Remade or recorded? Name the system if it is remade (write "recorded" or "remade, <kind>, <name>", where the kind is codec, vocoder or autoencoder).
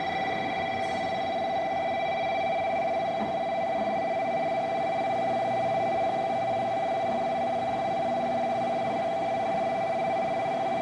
recorded